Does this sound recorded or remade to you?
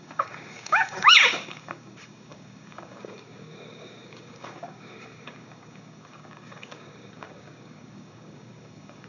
remade